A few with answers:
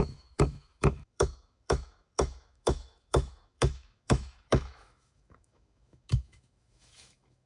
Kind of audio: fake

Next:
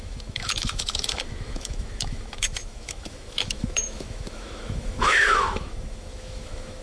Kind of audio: fake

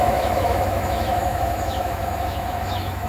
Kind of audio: fake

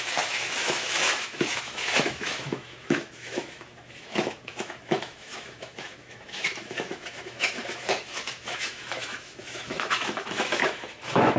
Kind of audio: fake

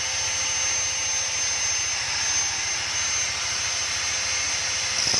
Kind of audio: real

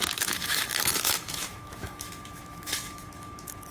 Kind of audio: fake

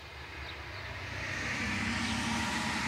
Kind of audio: real